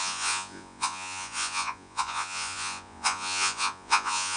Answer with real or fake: fake